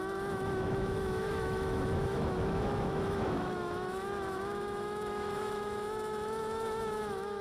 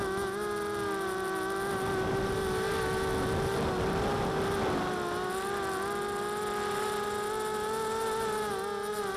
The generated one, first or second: first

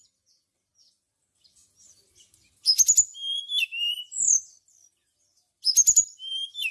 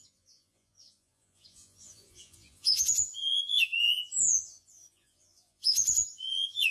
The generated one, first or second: second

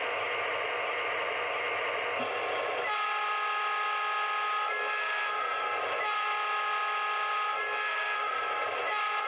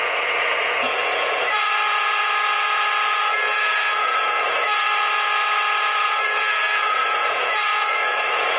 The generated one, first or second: second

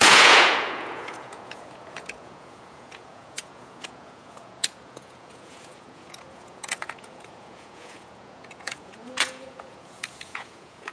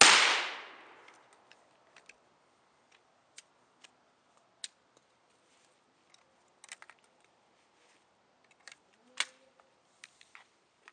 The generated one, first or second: first